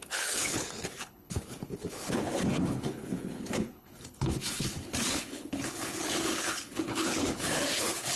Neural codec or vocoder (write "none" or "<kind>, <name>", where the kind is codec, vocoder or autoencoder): codec, HILCodec